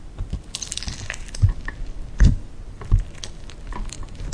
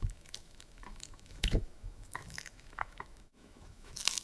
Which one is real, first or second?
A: first